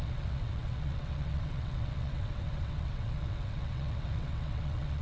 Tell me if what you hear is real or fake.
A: fake